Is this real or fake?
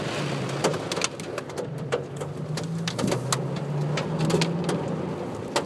real